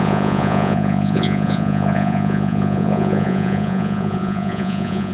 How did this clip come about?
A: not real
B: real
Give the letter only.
A